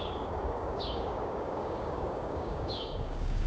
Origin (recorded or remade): remade